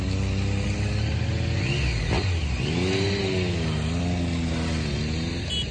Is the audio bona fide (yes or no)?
yes